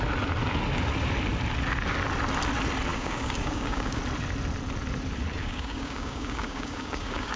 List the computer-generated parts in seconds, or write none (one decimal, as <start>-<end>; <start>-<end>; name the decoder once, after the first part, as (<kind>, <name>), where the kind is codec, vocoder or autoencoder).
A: 2.9-4.0 (codec, DAC); 5.4-7.4